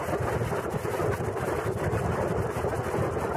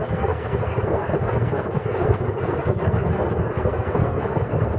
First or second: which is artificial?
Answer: second